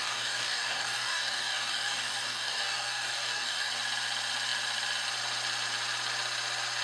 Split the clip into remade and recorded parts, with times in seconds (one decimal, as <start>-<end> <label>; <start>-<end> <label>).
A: 0.0-3.7 remade; 3.7-6.8 recorded